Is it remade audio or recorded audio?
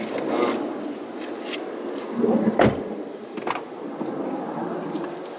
recorded